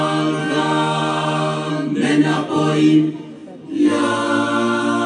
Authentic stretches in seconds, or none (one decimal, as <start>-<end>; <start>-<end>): 0.0-0.4; 1.7-5.1